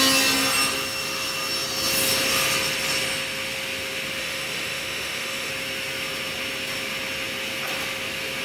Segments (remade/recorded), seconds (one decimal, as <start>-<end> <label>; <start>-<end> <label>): 0.0-4.2 recorded; 4.2-5.5 remade; 5.5-8.4 recorded